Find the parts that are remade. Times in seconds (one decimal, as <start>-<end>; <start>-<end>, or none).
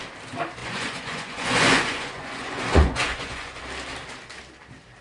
0.6-3.6